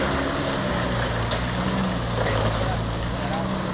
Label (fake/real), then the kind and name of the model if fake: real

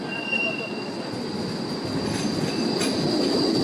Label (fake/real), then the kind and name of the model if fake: real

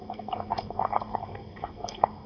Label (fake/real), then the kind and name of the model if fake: fake, codec, SNAC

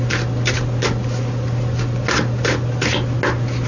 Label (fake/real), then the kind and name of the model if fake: real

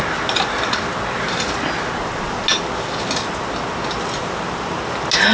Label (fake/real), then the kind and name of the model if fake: real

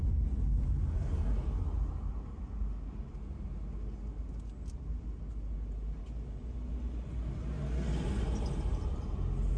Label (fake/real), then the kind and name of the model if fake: real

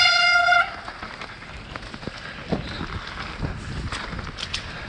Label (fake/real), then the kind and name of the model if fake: real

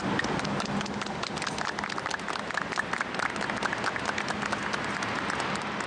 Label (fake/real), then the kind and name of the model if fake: real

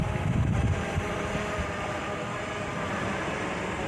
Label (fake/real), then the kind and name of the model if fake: fake, vocoder, BigVGAN v2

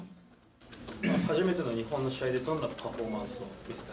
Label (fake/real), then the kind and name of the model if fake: real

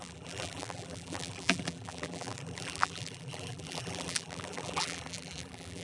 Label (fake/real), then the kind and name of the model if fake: fake, vocoder, BigVGAN v2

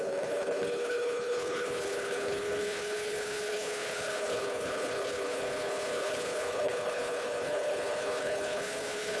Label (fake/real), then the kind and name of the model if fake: fake, codec, HILCodec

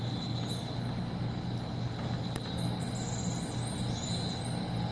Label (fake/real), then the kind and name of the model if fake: real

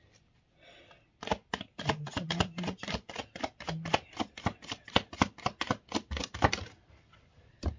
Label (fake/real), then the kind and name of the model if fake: fake, vocoder, BigVGAN v2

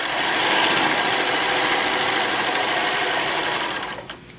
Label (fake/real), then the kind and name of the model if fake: real